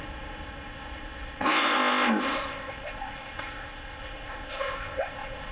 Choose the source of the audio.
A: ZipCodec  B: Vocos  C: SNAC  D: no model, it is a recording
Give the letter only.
A